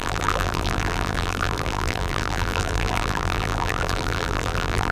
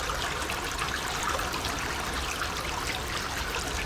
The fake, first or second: first